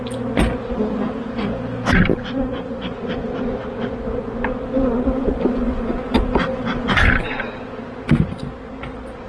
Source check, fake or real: real